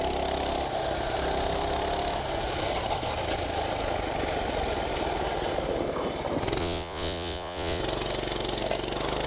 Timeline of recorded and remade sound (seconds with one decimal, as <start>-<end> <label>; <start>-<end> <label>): 0.0-6.6 recorded; 6.6-7.8 remade; 7.8-9.3 recorded